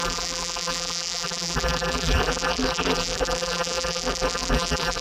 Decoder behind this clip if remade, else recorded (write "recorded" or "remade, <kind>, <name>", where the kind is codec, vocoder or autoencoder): remade, vocoder, BigVGAN v2